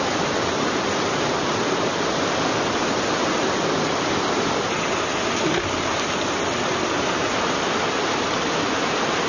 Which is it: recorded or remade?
recorded